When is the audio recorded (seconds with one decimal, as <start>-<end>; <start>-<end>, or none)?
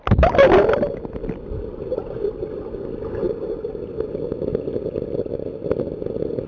0.0-6.5